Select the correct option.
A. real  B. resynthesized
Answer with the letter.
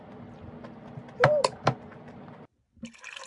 A